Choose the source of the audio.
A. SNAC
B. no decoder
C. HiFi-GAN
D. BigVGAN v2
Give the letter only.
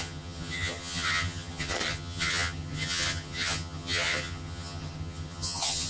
C